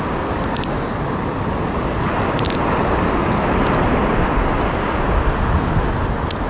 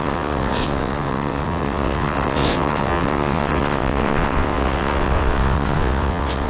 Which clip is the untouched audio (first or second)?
first